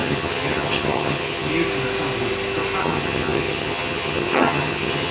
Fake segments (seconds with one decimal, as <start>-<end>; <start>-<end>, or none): 0.0-1.5; 2.8-5.1